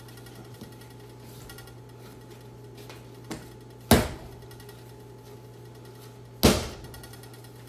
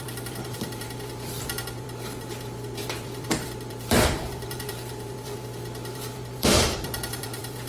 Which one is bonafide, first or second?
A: first